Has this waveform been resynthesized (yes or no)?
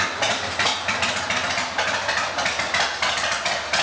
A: no